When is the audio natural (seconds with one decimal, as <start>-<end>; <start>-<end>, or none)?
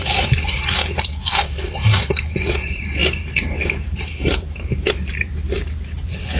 none